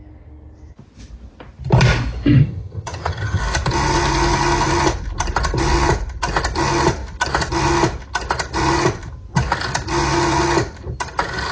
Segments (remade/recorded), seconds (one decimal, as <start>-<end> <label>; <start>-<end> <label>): 0.0-2.4 recorded; 2.4-3.4 remade; 3.4-11.5 recorded